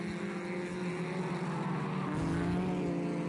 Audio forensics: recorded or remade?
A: recorded